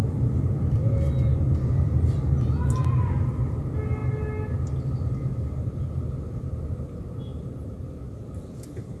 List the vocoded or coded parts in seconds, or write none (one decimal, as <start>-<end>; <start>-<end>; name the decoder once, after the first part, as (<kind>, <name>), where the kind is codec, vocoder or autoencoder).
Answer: none